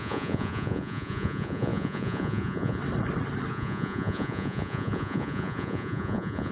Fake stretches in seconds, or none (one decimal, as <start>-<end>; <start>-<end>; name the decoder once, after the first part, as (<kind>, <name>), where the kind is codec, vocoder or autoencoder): 0.0-2.8 (vocoder, Vocos); 3.5-6.5